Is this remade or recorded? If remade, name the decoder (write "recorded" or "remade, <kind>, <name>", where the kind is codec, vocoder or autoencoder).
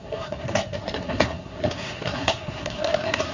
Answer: remade, codec, SNAC